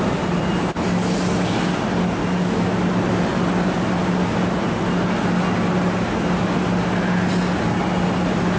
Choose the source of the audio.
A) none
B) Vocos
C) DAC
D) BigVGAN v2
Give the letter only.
A